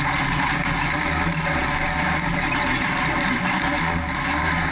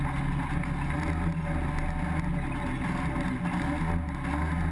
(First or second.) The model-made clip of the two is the first